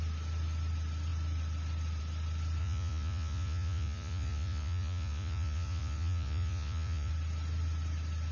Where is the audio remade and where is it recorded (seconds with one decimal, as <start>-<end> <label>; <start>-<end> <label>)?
0.0-2.6 recorded; 2.6-7.1 remade; 7.1-8.3 recorded